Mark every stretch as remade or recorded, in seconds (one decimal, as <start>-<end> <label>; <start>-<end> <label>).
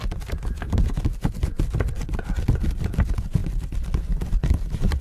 0.0-5.0 recorded